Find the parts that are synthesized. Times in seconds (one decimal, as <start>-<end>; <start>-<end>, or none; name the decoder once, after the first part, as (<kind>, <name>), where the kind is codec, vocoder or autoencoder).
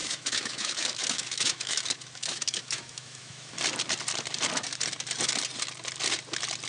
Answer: 0.0-3.5 (autoencoder, DAC-VAE)